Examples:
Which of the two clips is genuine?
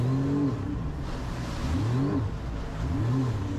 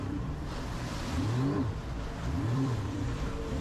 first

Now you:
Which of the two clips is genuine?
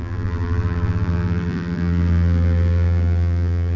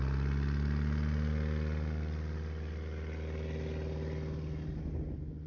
second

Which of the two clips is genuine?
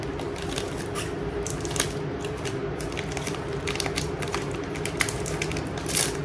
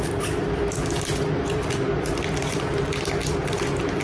second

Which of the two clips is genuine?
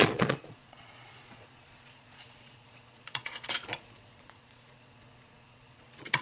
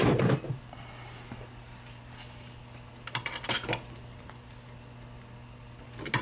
second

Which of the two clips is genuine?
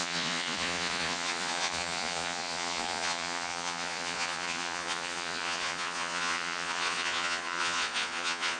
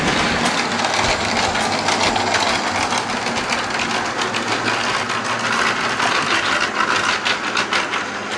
second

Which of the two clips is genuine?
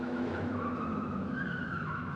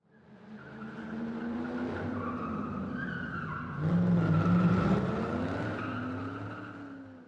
second